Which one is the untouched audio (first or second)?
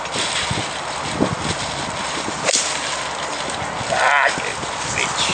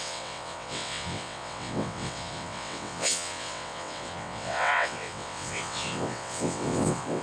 first